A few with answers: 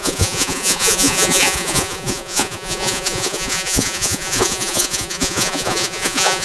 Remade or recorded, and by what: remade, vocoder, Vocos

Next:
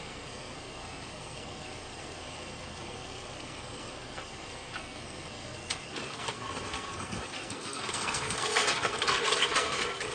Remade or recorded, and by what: remade, codec, SNAC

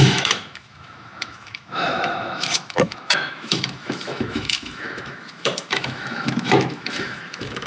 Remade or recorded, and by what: remade, autoencoder, DAC-VAE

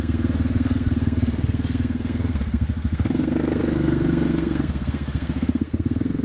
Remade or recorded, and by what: remade, codec, SNAC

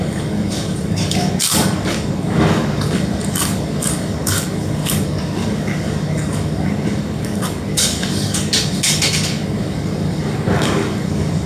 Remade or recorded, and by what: remade, codec, DAC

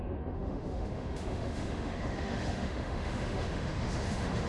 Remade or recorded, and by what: remade, autoencoder, DAC-VAE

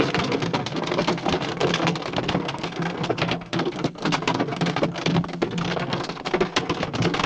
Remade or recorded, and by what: remade, codec, SNAC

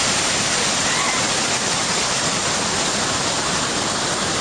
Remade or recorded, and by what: recorded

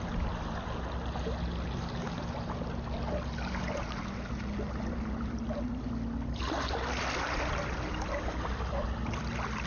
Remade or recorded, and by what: recorded